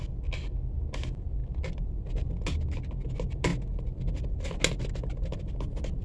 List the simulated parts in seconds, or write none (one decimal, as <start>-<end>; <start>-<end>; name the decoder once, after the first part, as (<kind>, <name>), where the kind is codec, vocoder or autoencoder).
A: none